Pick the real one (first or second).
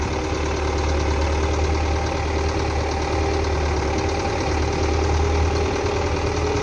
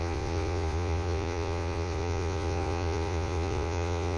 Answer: first